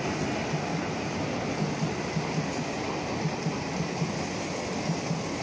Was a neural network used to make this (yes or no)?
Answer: no